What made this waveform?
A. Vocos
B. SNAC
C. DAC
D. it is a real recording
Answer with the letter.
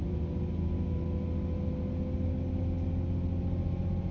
D